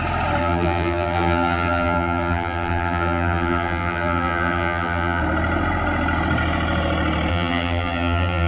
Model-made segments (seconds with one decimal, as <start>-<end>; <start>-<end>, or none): 0.4-5.2; 7.3-8.5